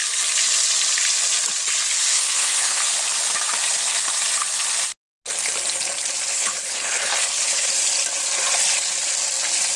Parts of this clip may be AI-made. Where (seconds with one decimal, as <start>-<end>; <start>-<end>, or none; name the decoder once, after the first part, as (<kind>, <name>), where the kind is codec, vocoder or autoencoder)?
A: 2.1-2.8 (codec, HILCodec); 6.3-7.7